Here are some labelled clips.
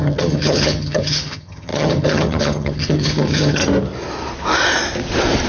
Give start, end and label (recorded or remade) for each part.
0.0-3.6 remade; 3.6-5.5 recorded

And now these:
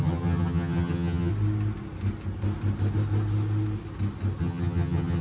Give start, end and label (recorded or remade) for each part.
0.0-1.3 remade; 1.3-4.4 recorded; 4.4-5.2 remade

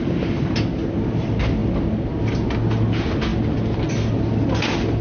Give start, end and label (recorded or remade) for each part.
0.0-5.0 recorded

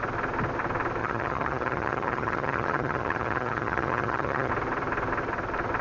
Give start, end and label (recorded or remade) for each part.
0.0-1.0 recorded; 1.0-4.5 remade; 4.5-5.8 recorded

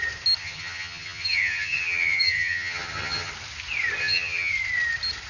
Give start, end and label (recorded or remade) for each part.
0.0-0.4 recorded; 0.4-3.3 remade; 3.3-4.0 recorded; 4.0-4.5 remade; 4.5-5.3 recorded

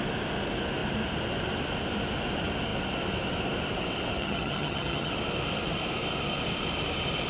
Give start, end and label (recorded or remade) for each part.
0.0-4.2 recorded; 4.2-5.1 remade; 5.1-7.3 recorded

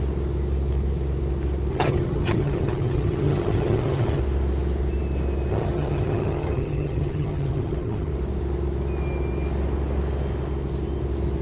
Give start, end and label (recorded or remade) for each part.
0.0-1.7 recorded; 1.7-4.2 remade; 4.2-5.5 recorded; 5.5-8.1 remade; 8.1-11.4 recorded

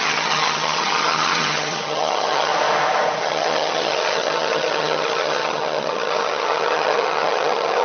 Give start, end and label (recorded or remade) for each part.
0.0-2.5 remade; 2.5-3.2 recorded; 3.2-7.8 remade